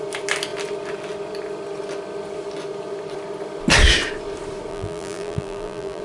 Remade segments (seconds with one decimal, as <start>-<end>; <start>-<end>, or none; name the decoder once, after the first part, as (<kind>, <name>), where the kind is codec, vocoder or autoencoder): 4.7-6.0 (vocoder, BigVGAN v2)